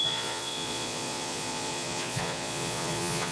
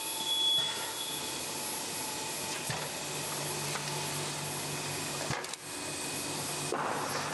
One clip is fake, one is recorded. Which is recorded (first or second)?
second